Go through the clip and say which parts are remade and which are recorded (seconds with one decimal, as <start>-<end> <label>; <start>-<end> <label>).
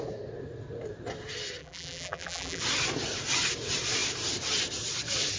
0.0-1.6 recorded; 1.6-2.6 remade; 2.6-5.4 recorded